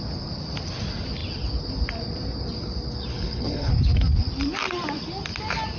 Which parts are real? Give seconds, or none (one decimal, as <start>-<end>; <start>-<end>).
0.0-3.1; 3.7-5.8